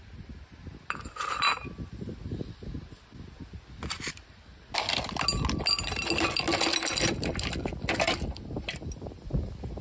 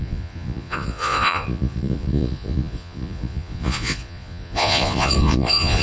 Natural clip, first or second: first